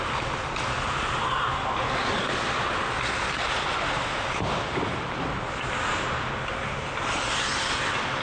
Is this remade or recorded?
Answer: recorded